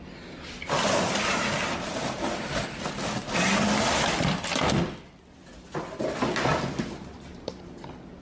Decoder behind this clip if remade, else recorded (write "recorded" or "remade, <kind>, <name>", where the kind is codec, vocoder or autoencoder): recorded